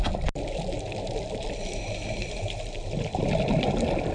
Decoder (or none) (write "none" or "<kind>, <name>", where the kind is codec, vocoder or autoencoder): none